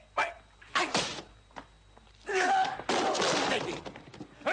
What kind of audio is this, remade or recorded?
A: recorded